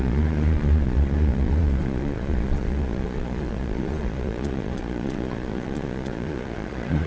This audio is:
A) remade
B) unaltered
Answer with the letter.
A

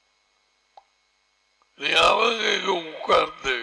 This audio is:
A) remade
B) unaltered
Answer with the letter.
B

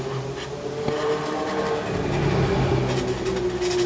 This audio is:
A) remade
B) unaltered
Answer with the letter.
B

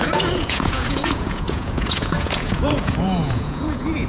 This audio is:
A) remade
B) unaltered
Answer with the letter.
A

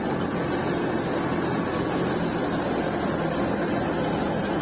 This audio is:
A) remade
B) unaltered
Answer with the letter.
B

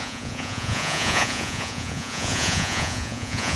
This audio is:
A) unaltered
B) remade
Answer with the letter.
B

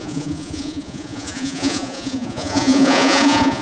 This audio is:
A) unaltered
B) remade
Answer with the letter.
B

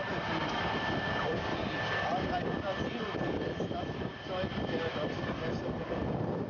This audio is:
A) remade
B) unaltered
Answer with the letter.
B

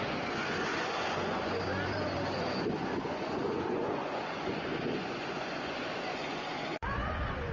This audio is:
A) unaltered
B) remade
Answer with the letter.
B